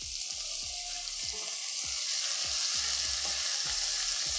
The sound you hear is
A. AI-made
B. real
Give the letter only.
B